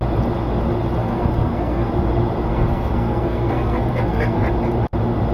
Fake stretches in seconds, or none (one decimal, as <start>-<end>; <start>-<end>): 1.0-1.9; 2.5-4.5